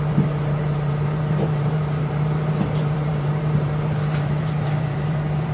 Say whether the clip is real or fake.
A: fake